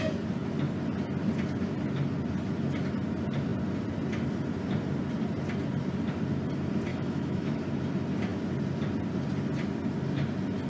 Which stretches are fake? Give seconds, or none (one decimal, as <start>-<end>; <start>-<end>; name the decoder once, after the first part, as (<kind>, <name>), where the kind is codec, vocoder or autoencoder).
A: 6.9-7.6 (autoencoder, DAC-VAE)